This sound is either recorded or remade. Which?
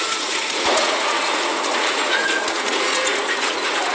remade